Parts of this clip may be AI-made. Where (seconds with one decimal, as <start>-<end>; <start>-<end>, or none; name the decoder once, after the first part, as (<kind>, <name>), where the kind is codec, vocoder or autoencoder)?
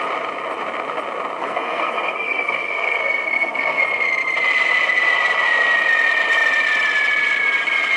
1.4-3.8 (codec, SNAC)